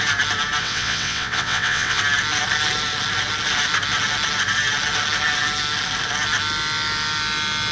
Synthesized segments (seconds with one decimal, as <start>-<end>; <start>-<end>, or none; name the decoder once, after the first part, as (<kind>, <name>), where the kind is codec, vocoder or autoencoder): 0.6-2.0 (vocoder, WaveNeXt)